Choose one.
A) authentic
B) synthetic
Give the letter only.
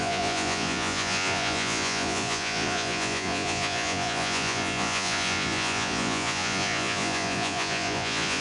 B